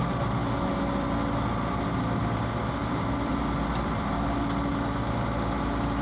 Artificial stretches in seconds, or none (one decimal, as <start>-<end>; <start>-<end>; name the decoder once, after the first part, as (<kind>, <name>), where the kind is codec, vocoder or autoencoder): 2.8-4.7 (vocoder, BigVGAN v2)